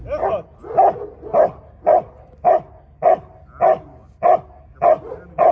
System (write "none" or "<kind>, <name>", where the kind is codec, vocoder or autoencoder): none